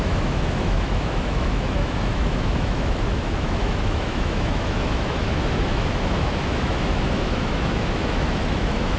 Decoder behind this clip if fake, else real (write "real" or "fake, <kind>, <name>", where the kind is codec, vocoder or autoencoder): fake, autoencoder, DAC-VAE